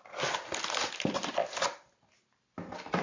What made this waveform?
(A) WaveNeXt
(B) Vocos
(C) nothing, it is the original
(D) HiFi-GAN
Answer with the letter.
C